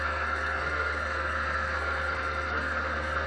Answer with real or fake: fake